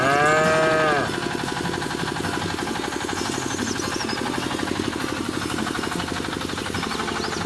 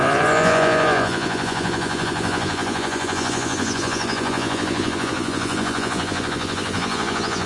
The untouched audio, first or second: first